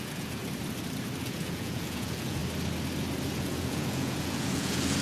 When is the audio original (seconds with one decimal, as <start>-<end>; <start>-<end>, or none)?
0.4-1.2; 2.4-3.4